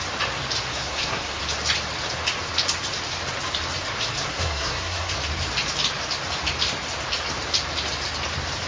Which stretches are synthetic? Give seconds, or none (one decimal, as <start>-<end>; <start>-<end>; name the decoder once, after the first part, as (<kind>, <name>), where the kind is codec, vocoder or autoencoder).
0.7-1.4 (codec, SNAC); 4.3-5.1